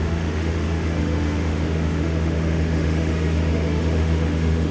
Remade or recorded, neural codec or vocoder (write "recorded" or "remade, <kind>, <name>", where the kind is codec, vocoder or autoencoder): remade, autoencoder, DAC-VAE